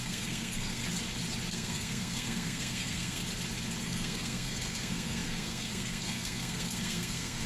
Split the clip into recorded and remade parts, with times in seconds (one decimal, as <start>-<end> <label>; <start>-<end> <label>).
0.0-0.8 remade; 0.8-1.5 recorded; 1.5-3.2 remade; 3.2-3.8 recorded; 3.8-7.5 remade